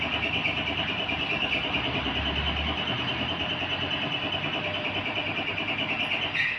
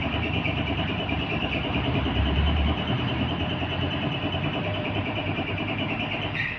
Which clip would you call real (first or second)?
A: first